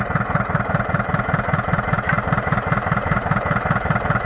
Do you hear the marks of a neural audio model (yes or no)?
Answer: no